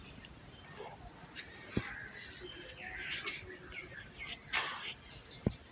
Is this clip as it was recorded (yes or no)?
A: yes